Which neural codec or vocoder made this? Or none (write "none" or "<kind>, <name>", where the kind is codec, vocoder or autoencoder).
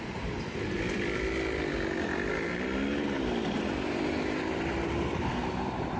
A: none